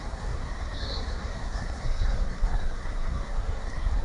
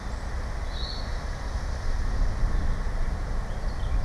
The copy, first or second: first